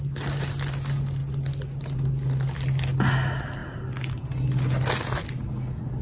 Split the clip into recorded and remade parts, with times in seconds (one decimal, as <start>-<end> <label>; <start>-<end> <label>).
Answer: 0.0-6.0 recorded